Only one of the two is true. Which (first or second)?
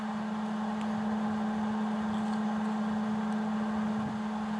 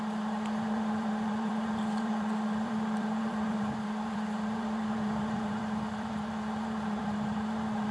first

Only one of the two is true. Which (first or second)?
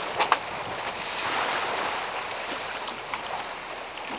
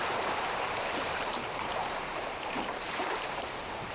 first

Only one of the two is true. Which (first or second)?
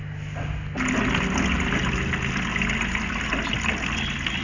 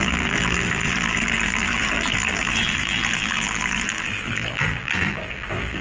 first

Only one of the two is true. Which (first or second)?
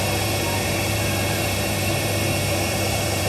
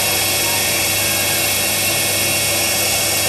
second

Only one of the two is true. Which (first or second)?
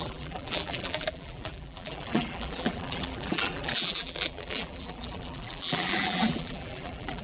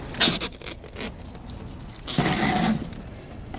second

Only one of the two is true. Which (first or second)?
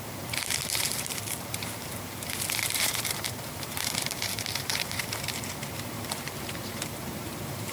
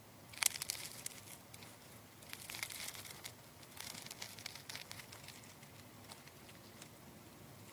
second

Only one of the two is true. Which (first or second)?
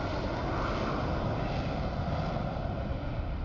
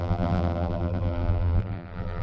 first